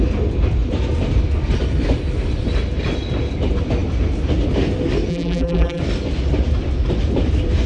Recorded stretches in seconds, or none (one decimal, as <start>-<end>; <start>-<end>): 0.0-5.1; 5.8-7.7